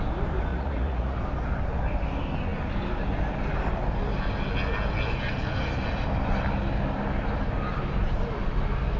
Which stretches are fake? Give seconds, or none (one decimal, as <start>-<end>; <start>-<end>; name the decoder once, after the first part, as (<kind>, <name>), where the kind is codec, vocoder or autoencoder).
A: 0.5-1.2 (vocoder, Vocos)